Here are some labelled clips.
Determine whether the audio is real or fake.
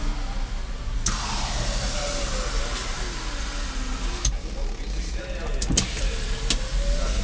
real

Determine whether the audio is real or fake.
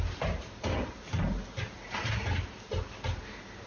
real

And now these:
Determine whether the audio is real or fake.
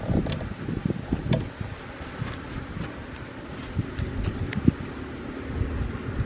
real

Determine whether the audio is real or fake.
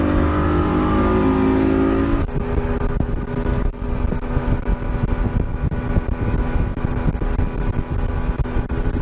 real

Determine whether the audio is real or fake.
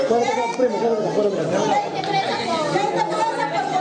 real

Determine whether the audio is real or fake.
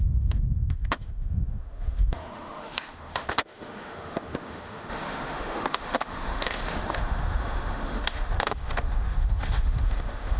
fake